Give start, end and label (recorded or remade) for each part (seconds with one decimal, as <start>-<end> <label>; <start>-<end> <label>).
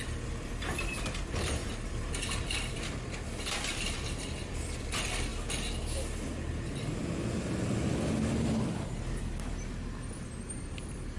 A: 0.0-1.6 remade; 1.6-2.4 recorded; 2.4-5.3 remade; 5.3-10.5 recorded; 10.5-11.2 remade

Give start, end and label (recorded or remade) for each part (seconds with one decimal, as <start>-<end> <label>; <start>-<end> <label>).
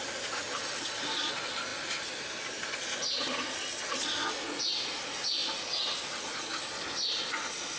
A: 0.0-7.8 recorded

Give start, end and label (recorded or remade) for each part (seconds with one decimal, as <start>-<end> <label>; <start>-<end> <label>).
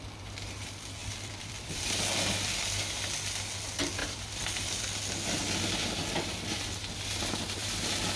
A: 0.0-1.0 recorded; 1.0-1.8 remade; 1.8-4.0 recorded; 4.0-4.8 remade; 4.8-7.6 recorded; 7.6-8.2 remade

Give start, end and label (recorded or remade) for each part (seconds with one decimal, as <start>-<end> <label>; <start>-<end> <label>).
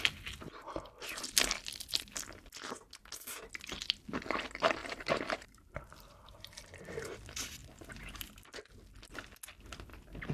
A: 0.0-4.8 recorded; 4.8-6.6 remade; 6.6-7.6 recorded; 7.6-8.3 remade; 8.3-10.3 recorded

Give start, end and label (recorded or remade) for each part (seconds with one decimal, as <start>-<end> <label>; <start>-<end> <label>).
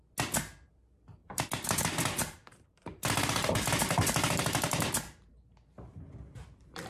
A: 0.0-1.2 recorded; 1.2-5.3 remade; 5.3-6.9 recorded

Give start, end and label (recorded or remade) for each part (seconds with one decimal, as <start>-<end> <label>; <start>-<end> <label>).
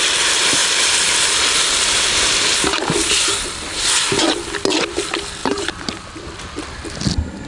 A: 0.0-0.6 recorded; 0.6-3.1 remade; 3.1-5.4 recorded; 5.4-6.6 remade; 6.6-7.5 recorded